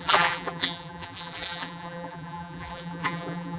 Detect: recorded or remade remade